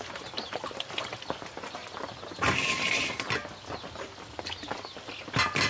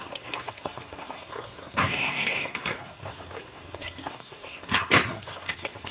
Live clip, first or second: first